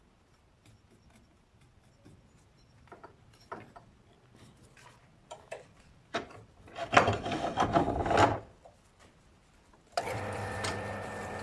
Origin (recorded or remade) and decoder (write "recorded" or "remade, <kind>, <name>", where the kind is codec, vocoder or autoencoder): recorded